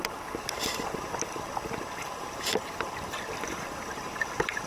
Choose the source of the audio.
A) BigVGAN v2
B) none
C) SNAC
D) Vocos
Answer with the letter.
B